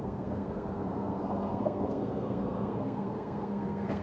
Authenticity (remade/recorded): remade